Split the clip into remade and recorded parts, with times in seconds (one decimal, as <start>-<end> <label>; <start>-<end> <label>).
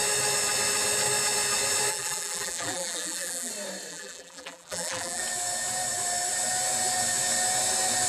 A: 0.0-1.9 recorded; 1.9-3.5 remade; 3.5-3.9 recorded; 3.9-5.2 remade; 5.2-8.1 recorded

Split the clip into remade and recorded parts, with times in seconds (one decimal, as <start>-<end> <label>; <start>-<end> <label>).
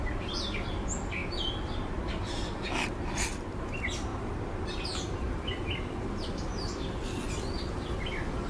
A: 0.0-8.5 recorded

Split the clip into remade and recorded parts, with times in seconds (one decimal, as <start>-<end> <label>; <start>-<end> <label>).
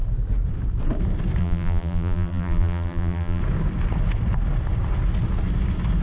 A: 0.0-1.4 recorded; 1.4-3.4 remade; 3.4-6.0 recorded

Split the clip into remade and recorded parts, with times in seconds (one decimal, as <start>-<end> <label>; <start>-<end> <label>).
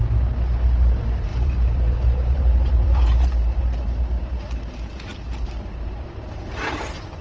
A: 0.0-1.3 recorded; 1.3-3.6 remade; 3.6-5.1 recorded; 5.1-6.8 remade; 6.8-7.2 recorded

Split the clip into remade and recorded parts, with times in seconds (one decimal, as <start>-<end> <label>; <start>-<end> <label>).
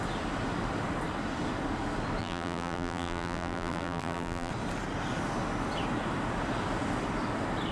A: 0.0-2.2 recorded; 2.2-4.5 remade; 4.5-7.7 recorded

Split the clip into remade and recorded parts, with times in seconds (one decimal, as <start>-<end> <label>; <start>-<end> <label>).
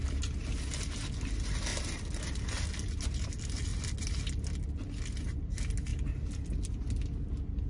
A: 0.0-1.7 recorded; 1.7-3.3 remade; 3.3-3.7 recorded; 3.7-4.6 remade; 4.6-7.7 recorded